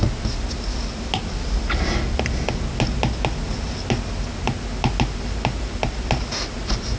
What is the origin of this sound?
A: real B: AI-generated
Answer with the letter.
A